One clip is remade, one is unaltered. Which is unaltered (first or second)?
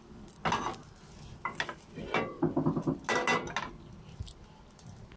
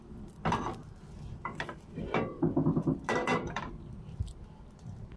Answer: first